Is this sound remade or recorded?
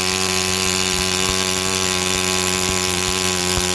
recorded